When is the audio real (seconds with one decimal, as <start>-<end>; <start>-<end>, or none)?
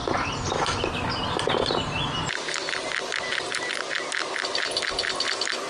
0.0-5.7